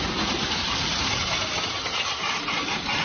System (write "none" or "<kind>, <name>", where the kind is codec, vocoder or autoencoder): vocoder, BigVGAN v2